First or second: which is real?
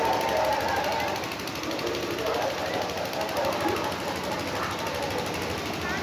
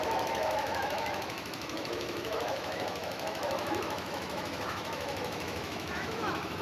first